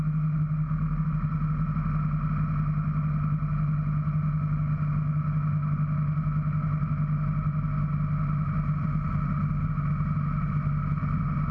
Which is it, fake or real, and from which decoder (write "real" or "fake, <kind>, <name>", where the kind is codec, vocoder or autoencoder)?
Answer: real